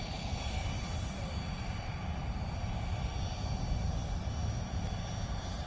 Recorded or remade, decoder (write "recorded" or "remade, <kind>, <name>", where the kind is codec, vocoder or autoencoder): recorded